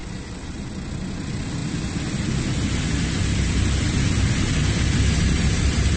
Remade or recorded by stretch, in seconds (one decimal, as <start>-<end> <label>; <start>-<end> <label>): 0.0-0.7 remade; 0.7-6.0 recorded